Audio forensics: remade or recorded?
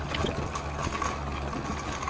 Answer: recorded